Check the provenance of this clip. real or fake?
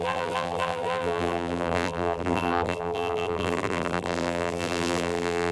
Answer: fake